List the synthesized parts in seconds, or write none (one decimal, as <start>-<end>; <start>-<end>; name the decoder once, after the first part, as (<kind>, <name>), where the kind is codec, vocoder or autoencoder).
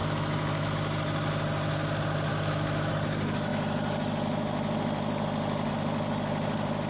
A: 0.0-0.7 (autoencoder, DAC-VAE); 2.3-2.9